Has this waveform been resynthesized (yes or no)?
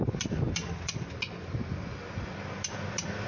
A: no